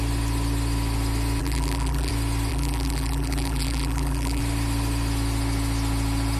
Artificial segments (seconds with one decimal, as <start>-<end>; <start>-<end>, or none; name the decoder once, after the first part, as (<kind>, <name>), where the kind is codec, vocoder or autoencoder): 1.4-2.1 (vocoder, BigVGAN v2); 2.5-4.4